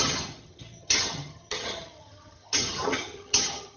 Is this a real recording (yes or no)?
no